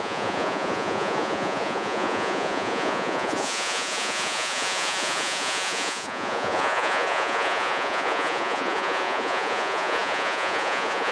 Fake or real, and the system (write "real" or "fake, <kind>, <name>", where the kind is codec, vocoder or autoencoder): fake, vocoder, Vocos